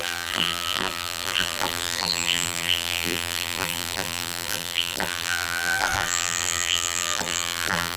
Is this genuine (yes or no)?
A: no